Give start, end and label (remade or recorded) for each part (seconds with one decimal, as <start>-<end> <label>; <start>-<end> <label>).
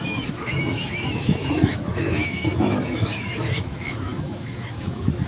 0.0-5.3 remade